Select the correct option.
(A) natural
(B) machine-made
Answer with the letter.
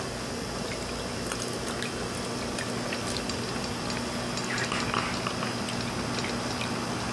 A